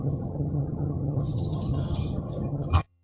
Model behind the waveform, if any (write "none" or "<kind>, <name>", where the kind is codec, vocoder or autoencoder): vocoder, HiFi-GAN